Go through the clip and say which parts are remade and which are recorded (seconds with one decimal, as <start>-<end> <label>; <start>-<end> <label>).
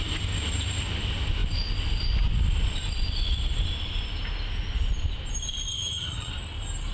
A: 0.0-5.7 recorded; 5.7-6.3 remade; 6.3-6.9 recorded